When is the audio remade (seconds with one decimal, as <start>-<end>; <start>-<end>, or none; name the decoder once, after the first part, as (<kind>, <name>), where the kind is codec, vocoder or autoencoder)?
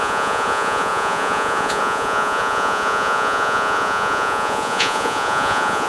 0.0-5.9 (vocoder, Vocos)